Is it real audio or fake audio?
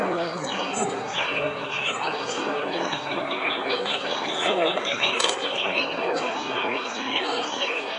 fake